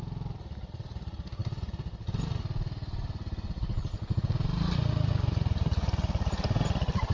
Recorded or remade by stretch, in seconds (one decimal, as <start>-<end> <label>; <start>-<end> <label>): 0.0-7.1 recorded